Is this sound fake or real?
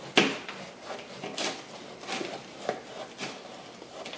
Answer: real